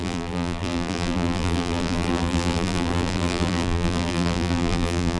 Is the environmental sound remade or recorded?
remade